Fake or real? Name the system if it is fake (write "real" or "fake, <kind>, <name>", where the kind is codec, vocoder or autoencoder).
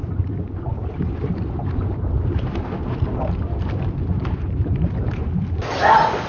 real